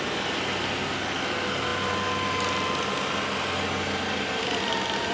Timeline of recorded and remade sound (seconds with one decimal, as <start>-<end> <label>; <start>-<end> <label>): 0.0-5.1 recorded